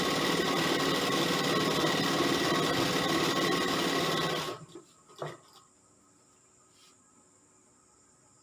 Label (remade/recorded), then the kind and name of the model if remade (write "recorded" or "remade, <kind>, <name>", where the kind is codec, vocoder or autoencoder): recorded